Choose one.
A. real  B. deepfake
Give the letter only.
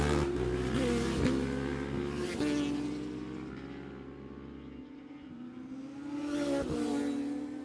A